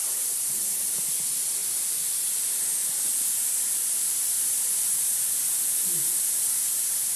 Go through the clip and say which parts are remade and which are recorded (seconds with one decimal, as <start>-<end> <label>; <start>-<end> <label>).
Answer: 0.0-0.7 remade; 0.7-2.8 recorded; 2.8-7.2 remade